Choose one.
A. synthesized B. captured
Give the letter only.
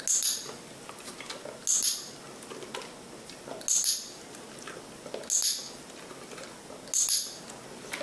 B